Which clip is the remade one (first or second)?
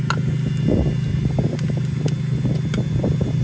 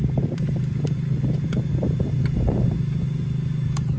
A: second